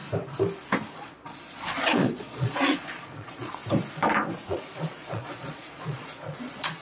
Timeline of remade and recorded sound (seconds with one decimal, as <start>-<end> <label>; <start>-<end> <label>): 0.0-0.9 recorded; 0.9-3.6 remade; 3.6-4.5 recorded; 4.5-6.8 remade